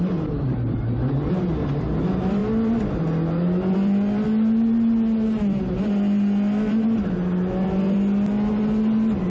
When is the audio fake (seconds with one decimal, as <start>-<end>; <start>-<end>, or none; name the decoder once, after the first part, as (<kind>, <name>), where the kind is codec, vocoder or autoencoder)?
none